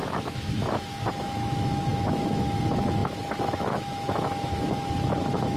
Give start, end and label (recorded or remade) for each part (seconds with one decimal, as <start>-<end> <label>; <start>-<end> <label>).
0.0-5.6 remade